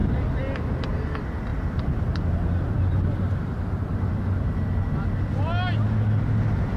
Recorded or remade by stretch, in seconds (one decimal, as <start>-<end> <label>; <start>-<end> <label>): 0.0-6.8 recorded